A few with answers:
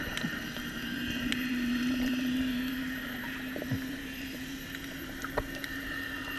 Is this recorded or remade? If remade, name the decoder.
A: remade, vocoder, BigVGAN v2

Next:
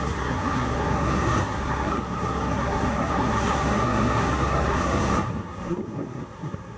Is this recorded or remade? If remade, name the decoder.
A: remade, codec, SNAC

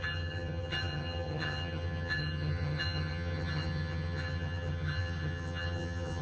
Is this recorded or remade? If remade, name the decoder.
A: remade, vocoder, HiFi-GAN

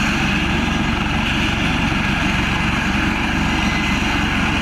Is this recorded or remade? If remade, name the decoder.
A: recorded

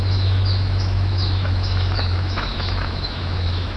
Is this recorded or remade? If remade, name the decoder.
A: remade, autoencoder, DAC-VAE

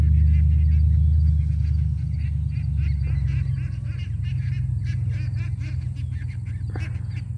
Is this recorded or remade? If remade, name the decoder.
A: recorded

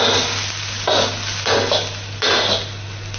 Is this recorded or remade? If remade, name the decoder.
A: recorded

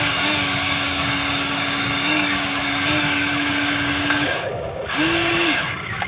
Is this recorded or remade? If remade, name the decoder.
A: remade, codec, DAC